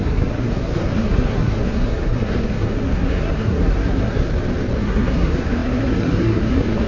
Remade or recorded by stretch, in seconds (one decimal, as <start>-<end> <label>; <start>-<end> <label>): 0.0-4.3 remade; 4.3-4.8 recorded; 4.8-6.9 remade